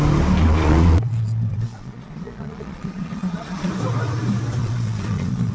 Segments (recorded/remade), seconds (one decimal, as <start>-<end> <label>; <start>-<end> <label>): 0.0-0.4 recorded; 0.4-3.7 remade; 3.7-4.6 recorded; 4.6-5.5 remade